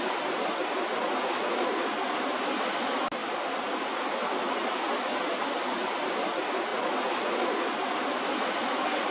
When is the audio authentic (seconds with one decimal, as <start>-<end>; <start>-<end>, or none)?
0.0-9.1